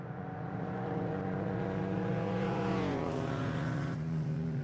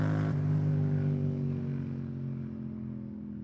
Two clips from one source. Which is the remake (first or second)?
first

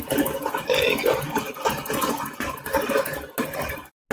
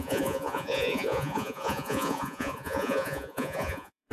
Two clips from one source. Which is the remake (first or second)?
second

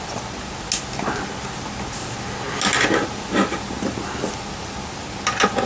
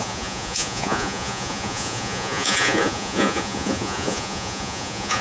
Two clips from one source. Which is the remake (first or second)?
second